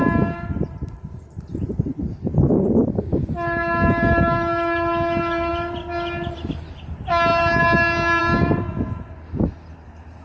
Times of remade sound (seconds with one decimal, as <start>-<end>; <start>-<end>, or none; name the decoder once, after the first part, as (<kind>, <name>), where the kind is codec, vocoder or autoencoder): none